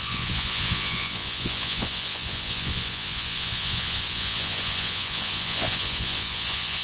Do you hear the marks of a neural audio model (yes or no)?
yes